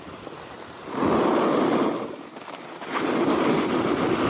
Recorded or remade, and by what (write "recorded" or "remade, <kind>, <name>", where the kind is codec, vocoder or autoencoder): recorded